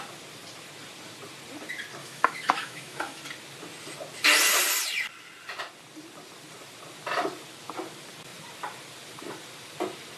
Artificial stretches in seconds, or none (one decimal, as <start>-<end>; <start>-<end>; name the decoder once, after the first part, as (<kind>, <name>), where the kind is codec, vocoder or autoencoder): 2.0-3.2 (autoencoder, DAC-VAE)